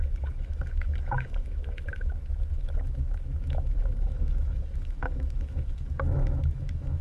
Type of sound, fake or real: fake